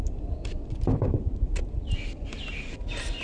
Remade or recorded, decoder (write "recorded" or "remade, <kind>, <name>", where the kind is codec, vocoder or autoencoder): recorded